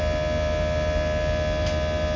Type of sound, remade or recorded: recorded